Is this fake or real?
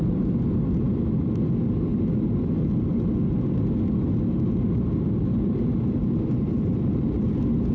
real